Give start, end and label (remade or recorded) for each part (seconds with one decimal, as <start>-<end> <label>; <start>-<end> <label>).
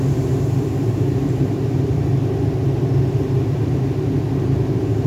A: 0.0-2.1 remade; 2.1-5.1 recorded